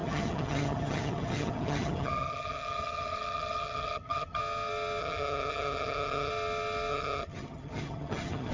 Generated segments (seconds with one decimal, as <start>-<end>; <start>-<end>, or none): 0.0-4.4; 5.0-6.3; 6.9-8.5